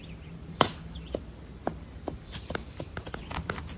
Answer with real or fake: real